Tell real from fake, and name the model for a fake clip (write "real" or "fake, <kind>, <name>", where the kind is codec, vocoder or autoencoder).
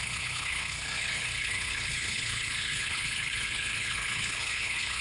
fake, codec, HILCodec